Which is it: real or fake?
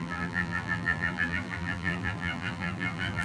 fake